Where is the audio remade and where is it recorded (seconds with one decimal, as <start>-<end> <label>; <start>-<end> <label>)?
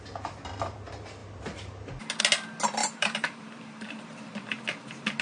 0.0-2.8 recorded; 2.8-4.6 remade; 4.6-5.2 recorded